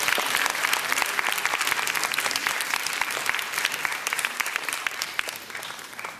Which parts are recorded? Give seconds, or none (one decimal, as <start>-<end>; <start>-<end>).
0.5-2.2